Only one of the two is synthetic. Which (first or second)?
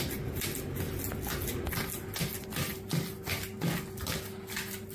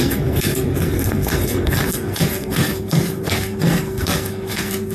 second